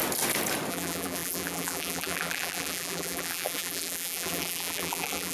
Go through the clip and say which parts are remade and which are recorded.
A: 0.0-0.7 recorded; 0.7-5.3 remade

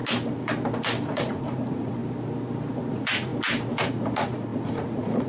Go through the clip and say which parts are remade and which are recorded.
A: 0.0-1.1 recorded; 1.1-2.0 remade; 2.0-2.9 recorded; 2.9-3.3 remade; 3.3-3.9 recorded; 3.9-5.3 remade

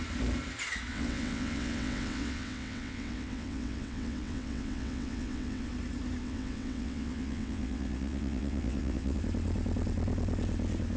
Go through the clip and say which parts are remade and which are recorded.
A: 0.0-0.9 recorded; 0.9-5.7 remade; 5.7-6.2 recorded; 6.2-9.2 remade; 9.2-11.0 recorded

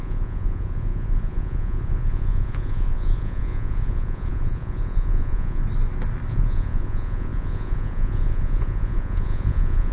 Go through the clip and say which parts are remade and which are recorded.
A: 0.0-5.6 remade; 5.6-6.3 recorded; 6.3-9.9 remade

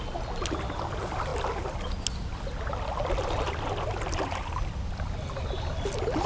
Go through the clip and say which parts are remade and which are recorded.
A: 0.0-6.3 recorded

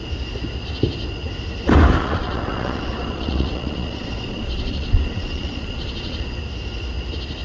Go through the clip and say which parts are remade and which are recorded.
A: 0.0-2.0 recorded; 2.0-6.4 remade; 6.4-7.4 recorded

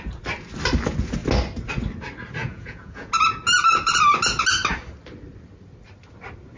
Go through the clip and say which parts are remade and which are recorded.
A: 0.0-2.4 recorded; 2.4-3.1 remade; 3.1-6.6 recorded